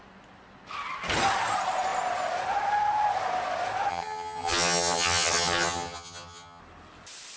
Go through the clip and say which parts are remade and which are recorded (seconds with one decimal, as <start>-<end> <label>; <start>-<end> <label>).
0.0-3.9 recorded; 3.9-6.6 remade; 6.6-7.4 recorded